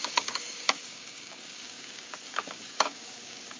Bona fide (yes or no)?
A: no